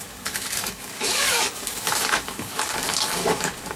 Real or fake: fake